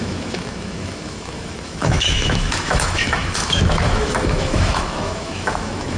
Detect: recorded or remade remade